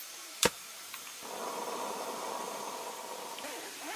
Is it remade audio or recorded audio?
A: recorded